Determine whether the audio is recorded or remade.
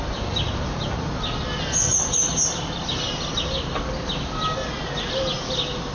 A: recorded